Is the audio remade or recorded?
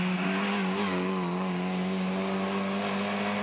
recorded